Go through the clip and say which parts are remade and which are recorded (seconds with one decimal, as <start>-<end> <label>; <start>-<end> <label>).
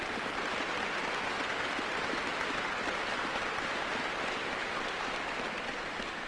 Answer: 0.0-4.4 recorded; 4.4-4.9 remade; 4.9-6.3 recorded